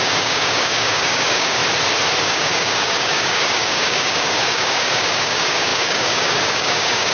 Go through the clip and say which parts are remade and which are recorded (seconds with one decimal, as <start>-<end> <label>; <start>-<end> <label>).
0.0-1.6 remade; 1.6-2.2 recorded; 2.2-7.1 remade